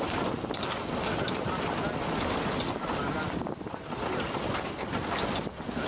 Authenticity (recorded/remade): recorded